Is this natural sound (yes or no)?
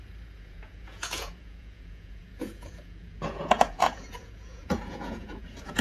no